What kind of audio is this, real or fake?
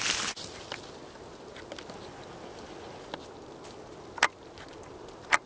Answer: real